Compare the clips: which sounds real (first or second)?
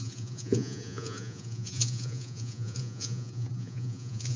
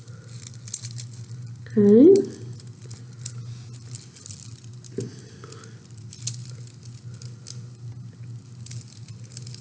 second